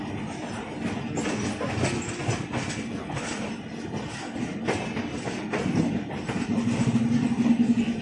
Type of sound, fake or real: real